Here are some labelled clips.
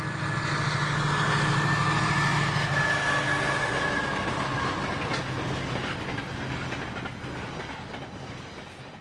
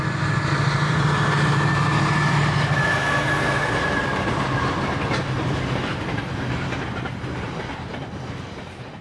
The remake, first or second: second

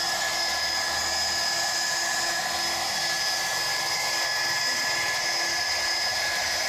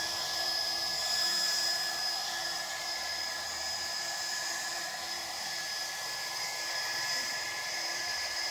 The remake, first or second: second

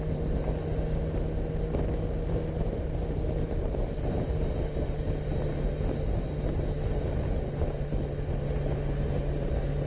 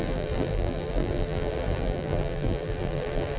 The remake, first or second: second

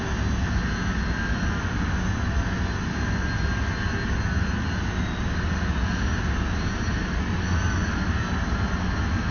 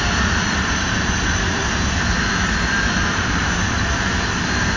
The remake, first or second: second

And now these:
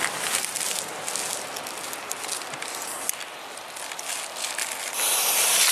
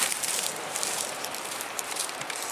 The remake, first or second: second